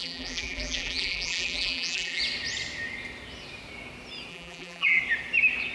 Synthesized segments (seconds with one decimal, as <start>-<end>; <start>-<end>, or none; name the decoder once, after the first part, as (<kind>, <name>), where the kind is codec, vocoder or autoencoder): 0.0-2.2 (vocoder, BigVGAN v2); 4.3-5.0